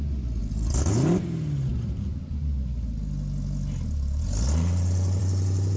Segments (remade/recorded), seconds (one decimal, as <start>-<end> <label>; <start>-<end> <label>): 0.0-0.4 recorded; 0.4-0.9 remade; 0.9-5.8 recorded